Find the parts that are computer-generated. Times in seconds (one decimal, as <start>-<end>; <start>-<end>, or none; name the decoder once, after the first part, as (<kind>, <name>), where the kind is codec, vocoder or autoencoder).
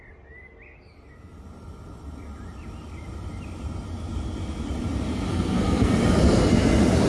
5.3-6.0 (codec, SNAC)